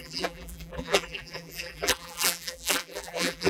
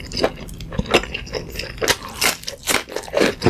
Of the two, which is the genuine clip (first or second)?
second